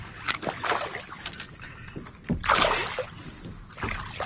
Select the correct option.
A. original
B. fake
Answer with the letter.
A